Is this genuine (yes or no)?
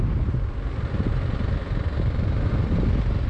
yes